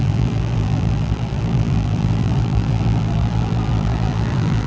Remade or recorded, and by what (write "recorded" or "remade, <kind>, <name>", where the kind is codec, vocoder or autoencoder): remade, vocoder, BigVGAN v2